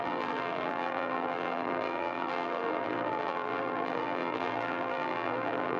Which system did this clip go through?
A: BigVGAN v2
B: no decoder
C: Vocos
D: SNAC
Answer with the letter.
A